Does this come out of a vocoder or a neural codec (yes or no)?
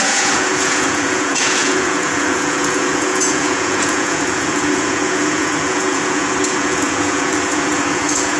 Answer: yes